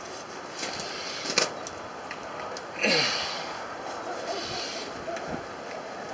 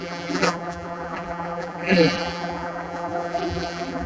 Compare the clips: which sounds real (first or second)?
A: first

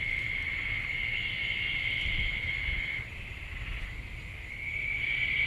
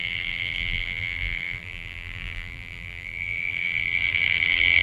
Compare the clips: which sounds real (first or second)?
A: first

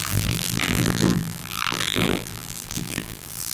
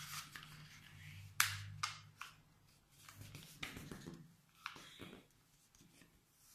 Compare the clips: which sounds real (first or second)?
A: second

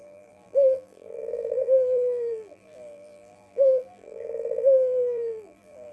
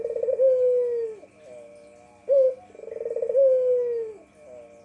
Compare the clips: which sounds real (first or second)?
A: second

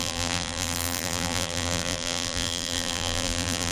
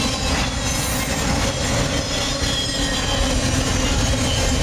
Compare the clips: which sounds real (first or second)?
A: second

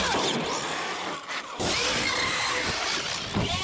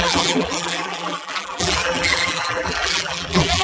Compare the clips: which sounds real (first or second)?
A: first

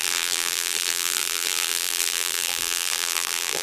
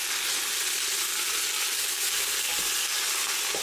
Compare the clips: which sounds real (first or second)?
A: second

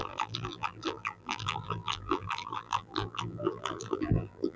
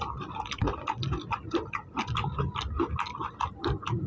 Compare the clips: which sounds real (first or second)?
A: second